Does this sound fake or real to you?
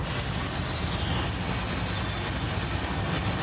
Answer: real